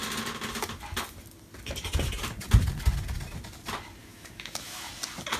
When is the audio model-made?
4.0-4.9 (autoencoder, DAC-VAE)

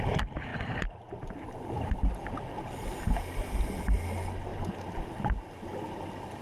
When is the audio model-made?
none

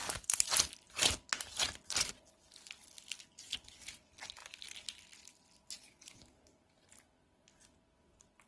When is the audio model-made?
none

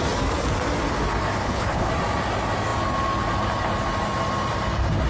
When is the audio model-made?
1.4-1.9 (codec, HILCodec)

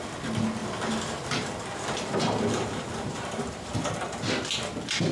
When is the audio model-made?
0.6-3.7 (vocoder, BigVGAN v2)

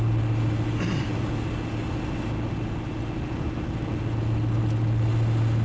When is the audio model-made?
none